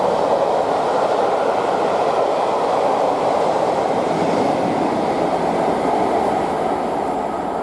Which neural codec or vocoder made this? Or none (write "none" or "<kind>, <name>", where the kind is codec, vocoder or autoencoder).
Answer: none